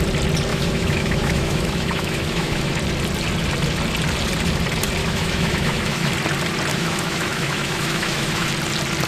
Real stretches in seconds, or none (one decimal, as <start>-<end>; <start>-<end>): 0.0-0.5; 2.7-5.0; 6.1-6.7; 8.5-9.1